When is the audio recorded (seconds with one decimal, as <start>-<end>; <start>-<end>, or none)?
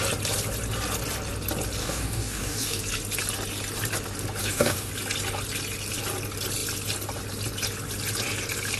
0.0-1.8; 2.8-4.4; 4.9-8.8